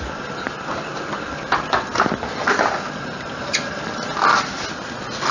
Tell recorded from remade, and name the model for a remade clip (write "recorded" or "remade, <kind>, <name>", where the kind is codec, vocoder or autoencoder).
recorded